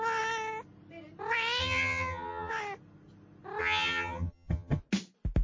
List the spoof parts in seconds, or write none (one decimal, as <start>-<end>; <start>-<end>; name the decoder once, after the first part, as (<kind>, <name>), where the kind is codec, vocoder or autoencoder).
1.6-2.5 (vocoder, HiFi-GAN); 3.6-4.8